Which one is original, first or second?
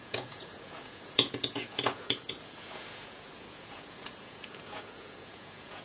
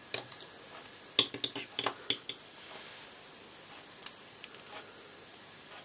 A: second